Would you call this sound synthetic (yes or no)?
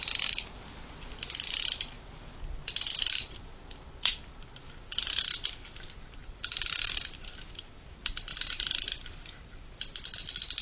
yes